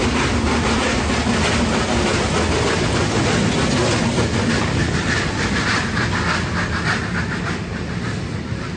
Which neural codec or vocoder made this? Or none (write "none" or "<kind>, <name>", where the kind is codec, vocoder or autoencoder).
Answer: none